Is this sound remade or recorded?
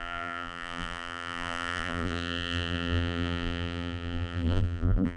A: remade